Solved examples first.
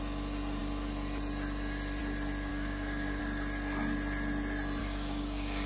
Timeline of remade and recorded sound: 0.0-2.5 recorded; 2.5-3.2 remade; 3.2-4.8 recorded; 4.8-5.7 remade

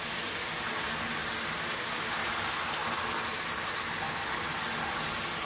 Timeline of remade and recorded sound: 0.0-5.5 recorded

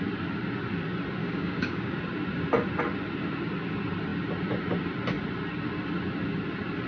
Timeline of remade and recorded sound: 0.0-1.2 recorded; 1.2-2.0 remade; 2.0-6.9 recorded

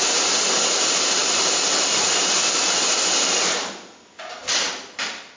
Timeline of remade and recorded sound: 0.0-5.4 recorded

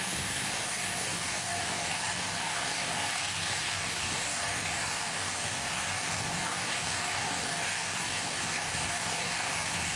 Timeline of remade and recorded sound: 0.0-10.0 remade